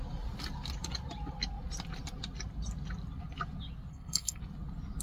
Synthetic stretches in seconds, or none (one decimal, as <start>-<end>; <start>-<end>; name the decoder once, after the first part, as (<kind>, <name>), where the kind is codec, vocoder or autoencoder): 3.9-4.4 (codec, SNAC)